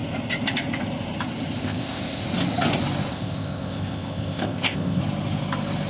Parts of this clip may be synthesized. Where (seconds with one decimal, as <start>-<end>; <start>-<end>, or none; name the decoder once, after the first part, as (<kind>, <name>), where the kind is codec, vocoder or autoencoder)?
1.6-2.2 (codec, ZipCodec); 3.1-5.0

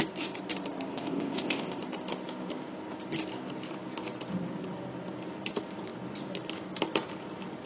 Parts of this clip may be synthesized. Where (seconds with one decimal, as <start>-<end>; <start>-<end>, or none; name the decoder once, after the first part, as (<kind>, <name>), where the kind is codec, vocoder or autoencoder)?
0.9-1.8 (codec, ZipCodec)

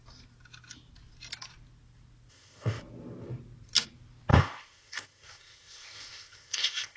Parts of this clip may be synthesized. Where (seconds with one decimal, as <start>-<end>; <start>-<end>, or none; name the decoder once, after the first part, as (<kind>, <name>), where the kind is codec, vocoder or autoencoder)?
2.3-2.8 (codec, ZipCodec); 4.3-7.0

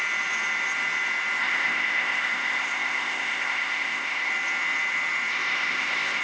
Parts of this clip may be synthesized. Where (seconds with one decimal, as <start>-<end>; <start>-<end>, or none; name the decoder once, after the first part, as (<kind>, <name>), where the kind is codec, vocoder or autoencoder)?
1.4-4.3 (codec, ZipCodec); 5.3-6.2